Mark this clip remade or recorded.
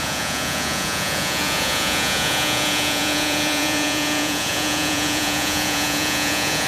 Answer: remade